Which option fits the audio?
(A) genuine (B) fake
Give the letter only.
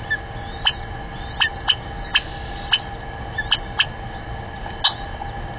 A